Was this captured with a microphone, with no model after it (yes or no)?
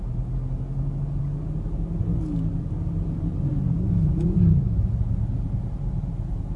yes